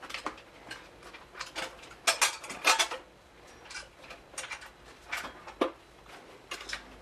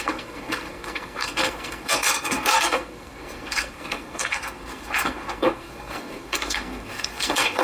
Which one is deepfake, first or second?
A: second